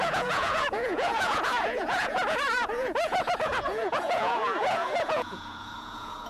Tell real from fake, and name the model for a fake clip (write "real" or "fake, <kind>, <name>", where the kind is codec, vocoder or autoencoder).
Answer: fake, vocoder, Vocos